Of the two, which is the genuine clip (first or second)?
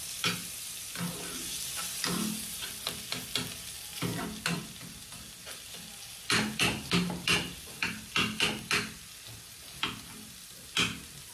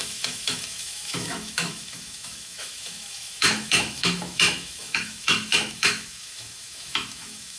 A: first